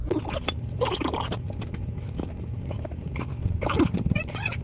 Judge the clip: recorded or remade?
recorded